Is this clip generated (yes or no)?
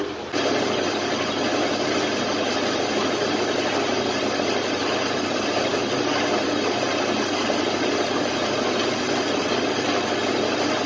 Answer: no